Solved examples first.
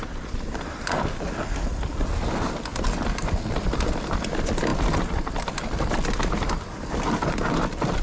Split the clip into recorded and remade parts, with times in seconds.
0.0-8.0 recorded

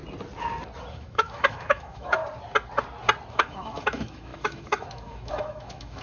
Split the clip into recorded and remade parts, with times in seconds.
0.0-0.9 recorded; 0.9-2.2 remade; 2.2-3.3 recorded; 3.3-6.0 remade

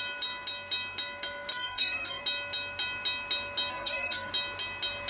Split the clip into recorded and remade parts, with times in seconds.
0.0-1.5 recorded; 1.5-2.2 remade; 2.2-3.7 recorded; 3.7-4.3 remade; 4.3-5.1 recorded